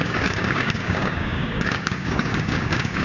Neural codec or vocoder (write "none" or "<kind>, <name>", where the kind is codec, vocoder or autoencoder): codec, DAC